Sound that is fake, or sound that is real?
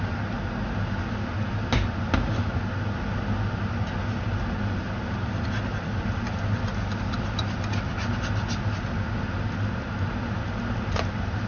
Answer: real